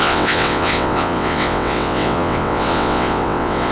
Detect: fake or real fake